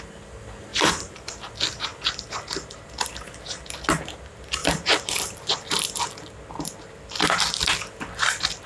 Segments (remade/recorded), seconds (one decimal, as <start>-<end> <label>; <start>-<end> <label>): 0.0-0.7 recorded; 0.7-1.5 remade; 1.5-4.6 recorded; 4.6-5.5 remade; 5.5-8.7 recorded